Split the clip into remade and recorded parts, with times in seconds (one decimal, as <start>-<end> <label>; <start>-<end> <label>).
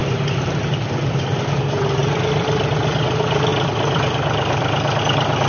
0.0-1.6 remade; 1.6-3.5 recorded; 3.5-5.0 remade; 5.0-5.5 recorded